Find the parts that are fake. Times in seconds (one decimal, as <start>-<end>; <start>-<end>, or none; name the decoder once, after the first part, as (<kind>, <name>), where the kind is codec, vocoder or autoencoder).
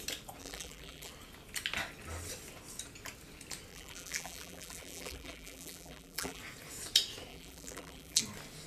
0.4-1.1 (vocoder, BigVGAN v2); 3.7-6.4; 7.3-8.2